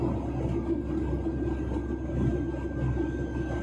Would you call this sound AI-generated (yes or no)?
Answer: no